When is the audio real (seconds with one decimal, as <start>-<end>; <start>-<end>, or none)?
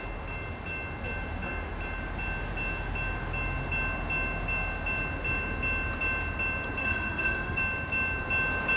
0.0-6.8; 7.6-8.8